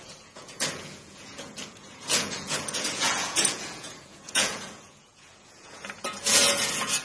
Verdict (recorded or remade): remade